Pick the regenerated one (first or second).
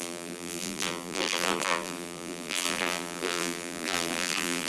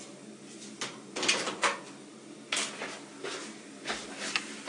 first